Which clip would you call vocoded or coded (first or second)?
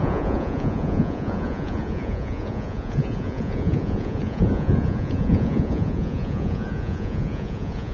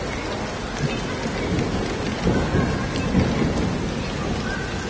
first